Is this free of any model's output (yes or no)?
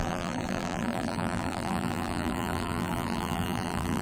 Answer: no